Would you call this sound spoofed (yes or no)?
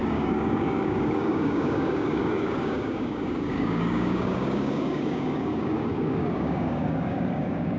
yes